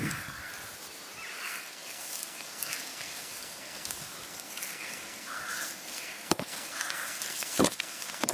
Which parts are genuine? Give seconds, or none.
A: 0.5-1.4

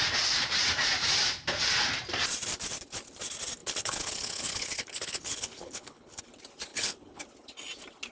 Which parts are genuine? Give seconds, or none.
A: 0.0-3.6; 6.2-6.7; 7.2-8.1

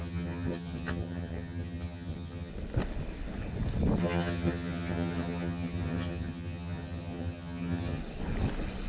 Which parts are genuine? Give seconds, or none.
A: 2.5-4.0; 8.0-8.9

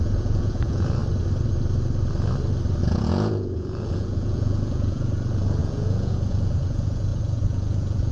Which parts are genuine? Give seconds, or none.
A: 1.0-2.8